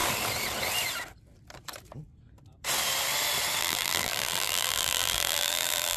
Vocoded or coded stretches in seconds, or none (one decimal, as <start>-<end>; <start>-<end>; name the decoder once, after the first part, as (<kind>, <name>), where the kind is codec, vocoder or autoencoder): 3.6-6.0 (vocoder, BigVGAN v2)